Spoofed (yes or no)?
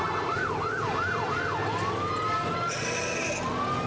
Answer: no